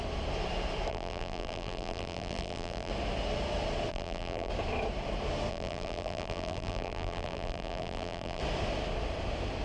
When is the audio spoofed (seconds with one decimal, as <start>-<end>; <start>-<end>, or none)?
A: 0.9-2.9; 3.9-4.5; 5.5-8.4